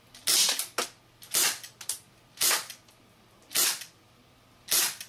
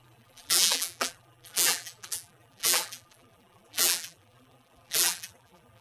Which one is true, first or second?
first